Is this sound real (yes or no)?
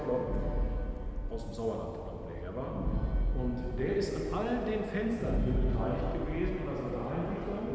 yes